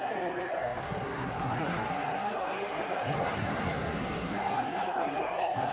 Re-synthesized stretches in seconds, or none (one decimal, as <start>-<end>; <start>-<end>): 0.0-5.7